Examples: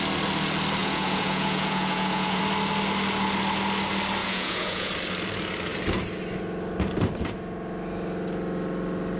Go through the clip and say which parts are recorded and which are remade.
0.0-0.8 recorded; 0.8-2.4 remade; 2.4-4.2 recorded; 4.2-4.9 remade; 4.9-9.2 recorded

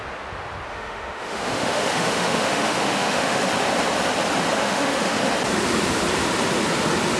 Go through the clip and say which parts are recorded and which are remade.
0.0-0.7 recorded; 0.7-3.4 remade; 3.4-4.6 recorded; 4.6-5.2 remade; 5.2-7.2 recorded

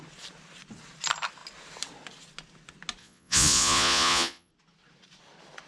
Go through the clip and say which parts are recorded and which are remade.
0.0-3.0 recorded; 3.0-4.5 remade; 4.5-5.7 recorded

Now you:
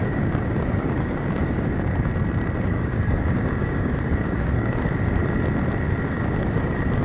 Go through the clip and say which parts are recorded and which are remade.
0.0-2.1 remade; 2.1-2.6 recorded; 2.6-5.2 remade; 5.2-6.0 recorded; 6.0-7.0 remade